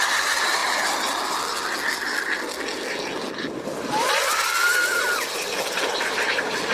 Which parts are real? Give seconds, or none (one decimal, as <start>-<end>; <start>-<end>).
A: 0.0-6.7